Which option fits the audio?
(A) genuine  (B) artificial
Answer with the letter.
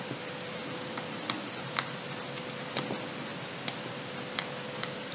A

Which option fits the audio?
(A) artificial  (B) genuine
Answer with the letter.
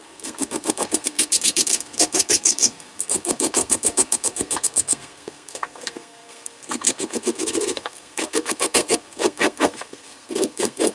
A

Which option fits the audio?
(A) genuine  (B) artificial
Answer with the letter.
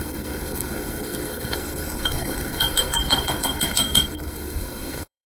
B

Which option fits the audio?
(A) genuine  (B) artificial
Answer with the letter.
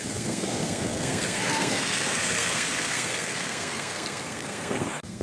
B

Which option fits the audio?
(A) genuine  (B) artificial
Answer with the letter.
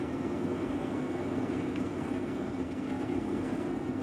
B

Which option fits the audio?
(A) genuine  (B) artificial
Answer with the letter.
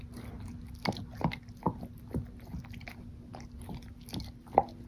A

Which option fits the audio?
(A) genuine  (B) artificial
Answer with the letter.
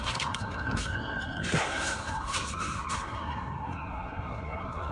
B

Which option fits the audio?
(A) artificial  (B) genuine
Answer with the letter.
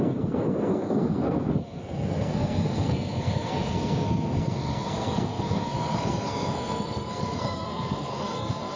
A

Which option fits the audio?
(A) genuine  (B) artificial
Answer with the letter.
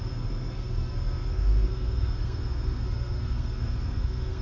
B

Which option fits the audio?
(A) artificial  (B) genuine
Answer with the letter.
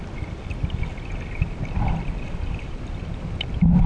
B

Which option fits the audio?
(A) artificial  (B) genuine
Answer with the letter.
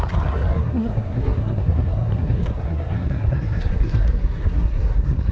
A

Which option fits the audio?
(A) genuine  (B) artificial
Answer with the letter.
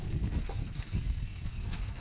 B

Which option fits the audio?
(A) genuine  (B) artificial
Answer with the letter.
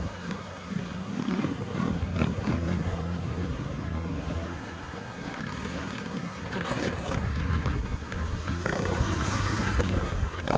B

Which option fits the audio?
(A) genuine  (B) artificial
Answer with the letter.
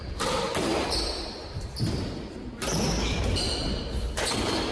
A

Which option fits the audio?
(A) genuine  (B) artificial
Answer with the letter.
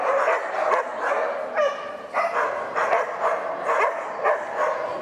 A